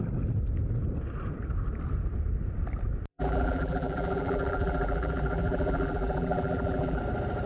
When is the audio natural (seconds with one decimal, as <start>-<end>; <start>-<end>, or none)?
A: 0.0-3.1; 7.0-7.5